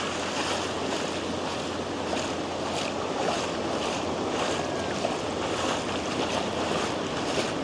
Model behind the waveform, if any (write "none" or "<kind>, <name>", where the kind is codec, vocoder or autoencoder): none